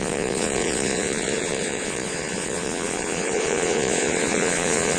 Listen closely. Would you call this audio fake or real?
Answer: fake